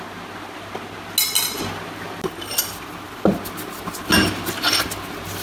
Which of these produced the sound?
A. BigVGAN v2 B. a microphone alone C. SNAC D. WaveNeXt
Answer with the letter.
B